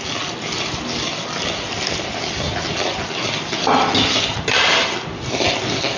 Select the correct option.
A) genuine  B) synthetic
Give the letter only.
A